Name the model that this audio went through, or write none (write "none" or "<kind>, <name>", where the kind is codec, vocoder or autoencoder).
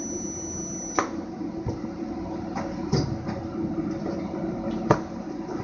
none